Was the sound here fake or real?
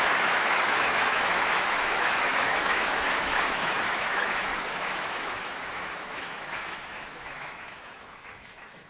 fake